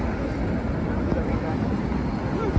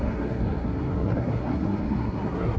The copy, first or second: second